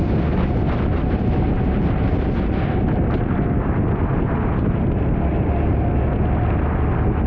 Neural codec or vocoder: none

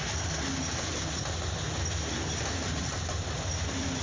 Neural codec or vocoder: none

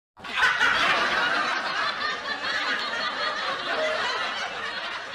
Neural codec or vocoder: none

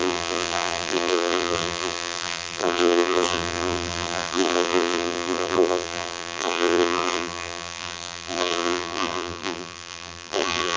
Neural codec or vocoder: vocoder, BigVGAN v2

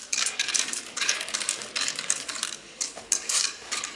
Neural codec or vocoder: codec, DAC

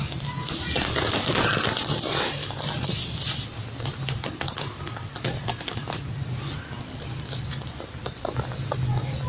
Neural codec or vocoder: none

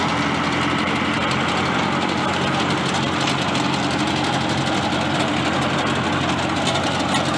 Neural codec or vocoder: none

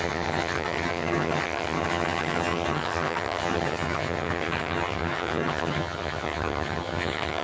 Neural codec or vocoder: vocoder, HiFi-GAN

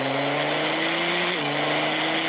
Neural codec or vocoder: none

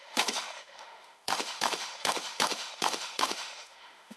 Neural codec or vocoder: autoencoder, DAC-VAE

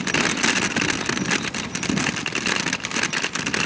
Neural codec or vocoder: none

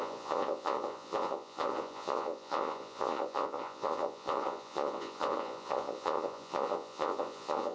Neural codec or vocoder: vocoder, Vocos